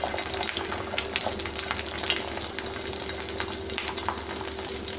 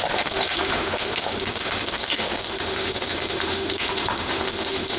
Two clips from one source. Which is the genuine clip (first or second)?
first